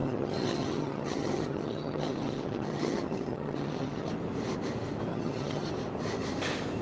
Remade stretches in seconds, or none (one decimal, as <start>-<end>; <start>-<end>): 0.0-4.1; 5.1-5.7